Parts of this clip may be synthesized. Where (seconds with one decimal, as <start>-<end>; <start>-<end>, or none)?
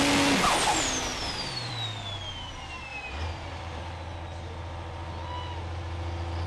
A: 1.1-1.7; 2.9-3.8